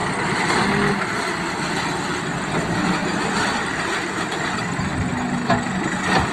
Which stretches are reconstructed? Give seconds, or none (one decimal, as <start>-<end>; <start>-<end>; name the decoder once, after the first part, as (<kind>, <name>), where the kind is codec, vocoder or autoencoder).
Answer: 3.0-4.3 (vocoder, BigVGAN v2)